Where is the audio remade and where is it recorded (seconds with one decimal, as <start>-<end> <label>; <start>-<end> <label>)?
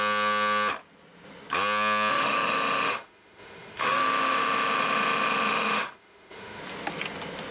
0.0-2.1 recorded; 2.1-6.6 remade; 6.6-7.5 recorded